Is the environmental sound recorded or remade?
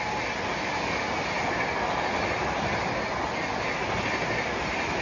recorded